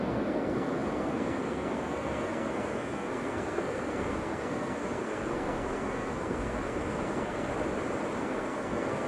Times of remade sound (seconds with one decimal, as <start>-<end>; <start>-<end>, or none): 0.0-7.5; 8.2-9.1